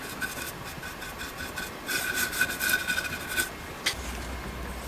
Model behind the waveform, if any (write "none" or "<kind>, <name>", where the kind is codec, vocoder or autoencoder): none